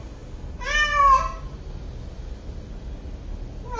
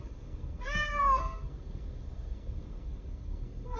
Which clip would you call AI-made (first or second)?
second